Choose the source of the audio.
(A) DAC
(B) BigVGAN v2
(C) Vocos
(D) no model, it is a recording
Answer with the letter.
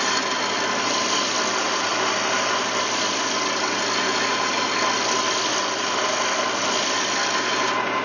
D